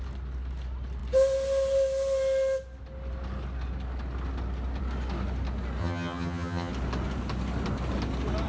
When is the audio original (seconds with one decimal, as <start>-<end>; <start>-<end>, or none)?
0.0-5.8; 6.7-8.5